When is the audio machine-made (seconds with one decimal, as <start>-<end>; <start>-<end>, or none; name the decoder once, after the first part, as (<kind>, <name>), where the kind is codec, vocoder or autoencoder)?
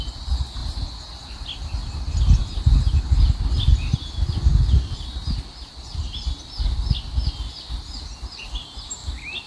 none